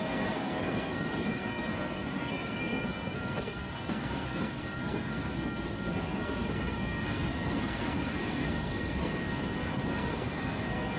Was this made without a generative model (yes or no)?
no